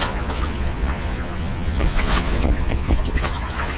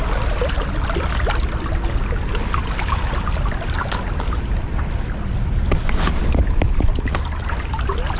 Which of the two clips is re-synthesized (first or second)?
first